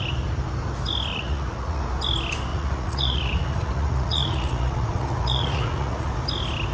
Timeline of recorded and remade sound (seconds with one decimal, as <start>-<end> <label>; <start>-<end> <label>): 0.0-1.1 recorded; 1.1-1.8 remade; 1.8-2.5 recorded; 2.5-6.1 remade; 6.1-6.7 recorded